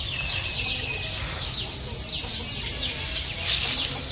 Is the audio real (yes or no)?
yes